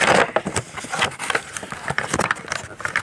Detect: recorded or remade recorded